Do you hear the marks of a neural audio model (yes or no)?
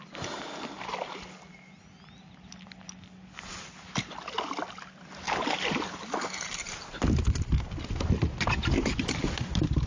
no